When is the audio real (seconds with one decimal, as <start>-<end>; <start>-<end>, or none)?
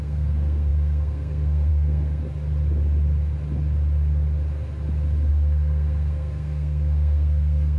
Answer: 2.2-5.3